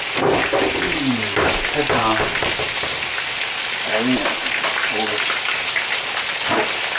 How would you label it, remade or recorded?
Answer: recorded